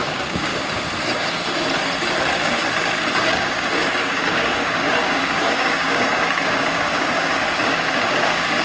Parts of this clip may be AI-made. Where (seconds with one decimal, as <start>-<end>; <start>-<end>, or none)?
0.0-0.5; 3.1-8.6